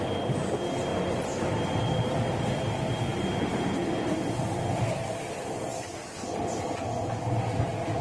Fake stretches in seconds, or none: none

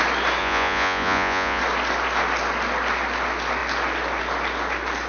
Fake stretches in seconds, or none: 0.4-1.6 (vocoder, Vocos)

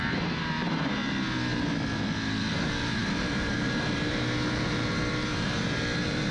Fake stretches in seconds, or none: 0.0-1.0 (vocoder, BigVGAN v2); 2.5-6.3

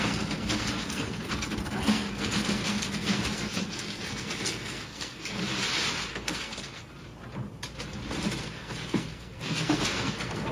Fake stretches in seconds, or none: 0.0-5.4 (codec, SNAC); 6.1-6.9; 8.4-10.5

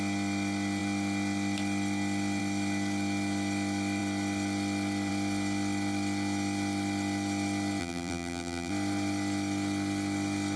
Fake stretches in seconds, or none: 7.8-8.7 (vocoder, BigVGAN v2)

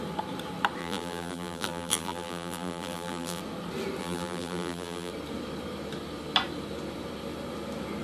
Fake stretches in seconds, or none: 0.8-3.4 (vocoder, BigVGAN v2); 4.0-5.1

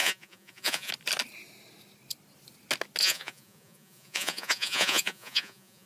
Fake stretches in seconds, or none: 0.0-0.9 (vocoder, Vocos); 3.0-5.9

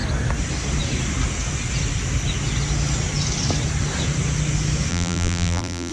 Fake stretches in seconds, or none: 4.9-5.9 (vocoder, BigVGAN v2)